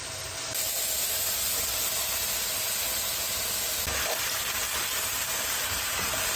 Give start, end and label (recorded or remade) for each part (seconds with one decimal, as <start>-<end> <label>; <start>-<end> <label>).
0.0-6.4 recorded

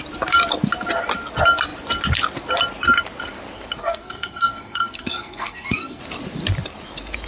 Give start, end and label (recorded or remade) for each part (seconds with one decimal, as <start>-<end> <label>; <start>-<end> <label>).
0.0-3.8 recorded; 3.8-6.0 remade; 6.0-7.3 recorded

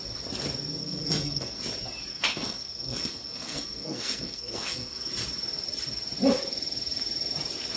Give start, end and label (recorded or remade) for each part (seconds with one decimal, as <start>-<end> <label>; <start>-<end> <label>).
0.0-0.8 recorded; 0.8-1.6 remade; 1.6-2.1 recorded; 2.1-5.1 remade; 5.1-7.8 recorded